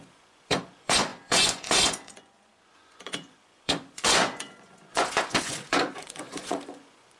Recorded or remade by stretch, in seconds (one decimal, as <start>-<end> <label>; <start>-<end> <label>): 0.0-7.2 remade